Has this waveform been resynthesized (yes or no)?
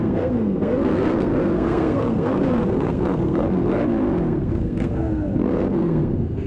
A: yes